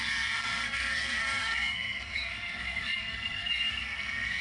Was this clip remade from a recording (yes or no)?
yes